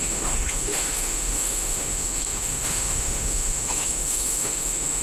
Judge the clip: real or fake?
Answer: fake